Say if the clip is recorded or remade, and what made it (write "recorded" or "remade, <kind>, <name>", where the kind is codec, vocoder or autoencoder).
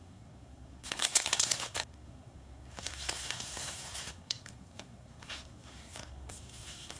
remade, codec, SNAC